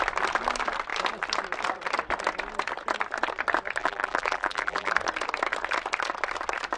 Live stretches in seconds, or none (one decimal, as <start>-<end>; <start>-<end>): 0.0-3.8; 4.9-6.8